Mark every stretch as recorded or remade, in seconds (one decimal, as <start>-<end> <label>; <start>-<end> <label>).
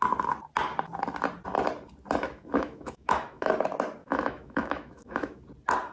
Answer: 0.0-2.2 recorded; 2.2-3.5 remade; 3.5-4.0 recorded; 4.0-5.4 remade; 5.4-5.9 recorded